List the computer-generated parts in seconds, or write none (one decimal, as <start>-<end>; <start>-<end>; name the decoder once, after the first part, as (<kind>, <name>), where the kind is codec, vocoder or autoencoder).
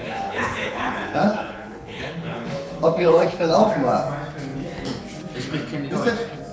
0.0-3.7 (codec, HILCodec)